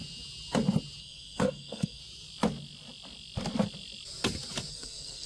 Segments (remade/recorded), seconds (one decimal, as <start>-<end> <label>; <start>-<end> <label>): 0.0-1.0 recorded; 1.0-2.0 remade; 2.0-4.7 recorded; 4.7-5.3 remade